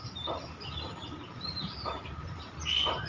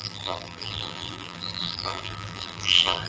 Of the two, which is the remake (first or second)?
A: second